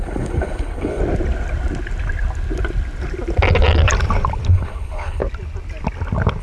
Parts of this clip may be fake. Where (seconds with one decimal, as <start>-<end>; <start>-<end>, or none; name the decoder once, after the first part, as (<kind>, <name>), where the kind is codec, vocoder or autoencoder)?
0.0-1.0 (codec, HILCodec); 4.5-5.2